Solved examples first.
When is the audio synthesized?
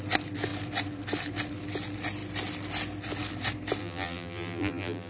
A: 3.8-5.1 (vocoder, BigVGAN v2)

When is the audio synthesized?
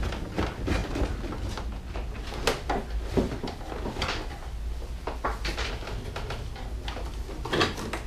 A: none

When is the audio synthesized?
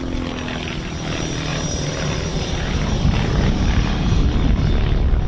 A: 1.5-4.2 (vocoder, BigVGAN v2)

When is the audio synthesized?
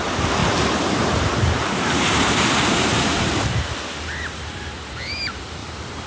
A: 0.4-3.3 (vocoder, BigVGAN v2); 5.6-6.1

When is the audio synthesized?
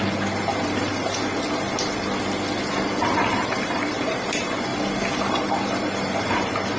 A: 0.0-0.9 (vocoder, BigVGAN v2); 3.3-4.7; 5.3-6.8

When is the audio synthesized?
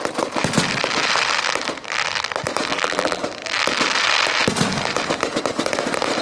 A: 2.7-3.2 (vocoder, BigVGAN v2)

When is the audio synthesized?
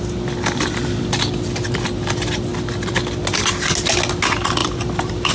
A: 4.6-5.3 (vocoder, BigVGAN v2)